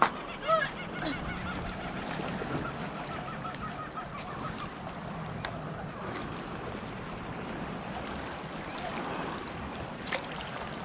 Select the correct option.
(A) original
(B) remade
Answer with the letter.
A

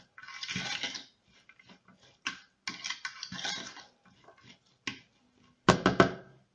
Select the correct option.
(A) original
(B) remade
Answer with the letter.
A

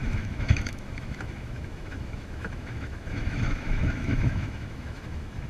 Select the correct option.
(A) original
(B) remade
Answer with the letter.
B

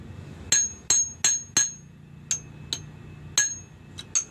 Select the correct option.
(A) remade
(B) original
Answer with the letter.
B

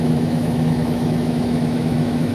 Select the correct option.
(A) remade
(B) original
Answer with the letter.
A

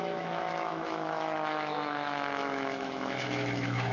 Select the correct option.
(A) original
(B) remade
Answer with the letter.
B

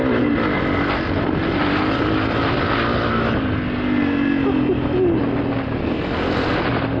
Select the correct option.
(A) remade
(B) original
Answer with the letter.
B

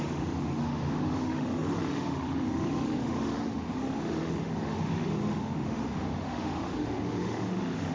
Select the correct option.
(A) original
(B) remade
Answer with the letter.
B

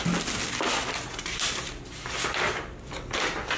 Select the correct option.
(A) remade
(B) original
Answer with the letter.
B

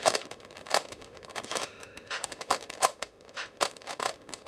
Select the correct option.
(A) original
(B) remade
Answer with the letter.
B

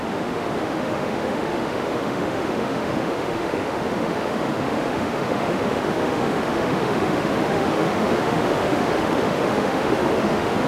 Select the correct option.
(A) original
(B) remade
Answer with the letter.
B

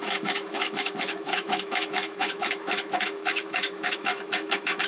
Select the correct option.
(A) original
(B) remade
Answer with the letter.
B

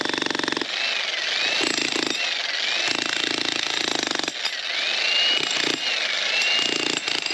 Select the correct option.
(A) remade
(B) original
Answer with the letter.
B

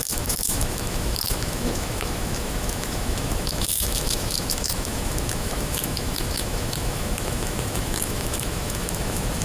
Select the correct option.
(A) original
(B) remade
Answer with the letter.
B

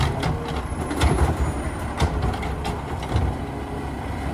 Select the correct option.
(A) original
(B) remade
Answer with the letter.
A